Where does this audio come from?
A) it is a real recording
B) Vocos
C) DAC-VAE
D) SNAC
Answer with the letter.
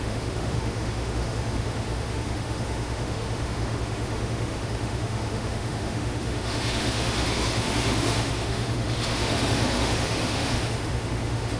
C